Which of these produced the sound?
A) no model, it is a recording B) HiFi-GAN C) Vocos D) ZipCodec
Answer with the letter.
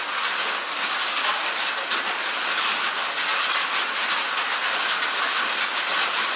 A